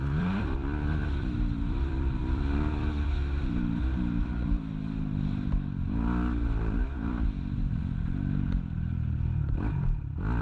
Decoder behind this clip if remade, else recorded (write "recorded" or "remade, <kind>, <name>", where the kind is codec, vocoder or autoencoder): remade, vocoder, BigVGAN v2